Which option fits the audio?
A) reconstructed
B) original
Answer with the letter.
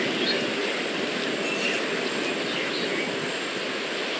B